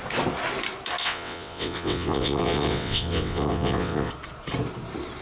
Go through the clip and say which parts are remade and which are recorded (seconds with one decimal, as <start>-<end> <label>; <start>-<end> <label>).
0.0-1.0 recorded; 1.0-4.1 remade; 4.1-5.2 recorded